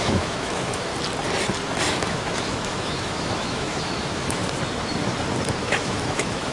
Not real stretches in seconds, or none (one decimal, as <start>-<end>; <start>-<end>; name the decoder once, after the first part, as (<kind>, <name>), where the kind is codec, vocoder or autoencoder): 0.0-0.9 (autoencoder, DAC-VAE); 1.9-4.4; 5.6-6.5